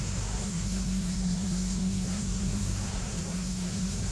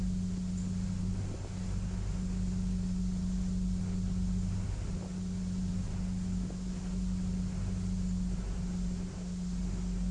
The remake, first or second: first